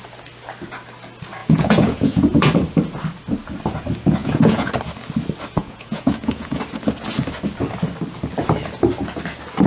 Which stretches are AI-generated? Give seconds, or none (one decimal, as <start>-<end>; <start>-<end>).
1.4-2.5; 4.2-4.7; 5.6-6.6